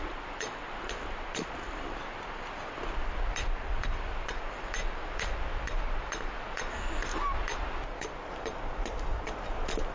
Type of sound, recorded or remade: recorded